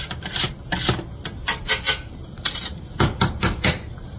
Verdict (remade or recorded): recorded